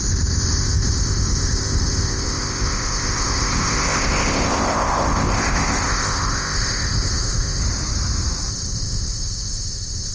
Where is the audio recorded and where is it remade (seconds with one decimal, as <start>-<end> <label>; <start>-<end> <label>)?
0.0-7.6 remade; 7.6-8.5 recorded; 8.5-10.1 remade